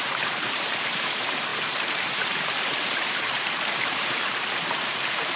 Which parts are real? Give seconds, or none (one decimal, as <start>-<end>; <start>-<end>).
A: none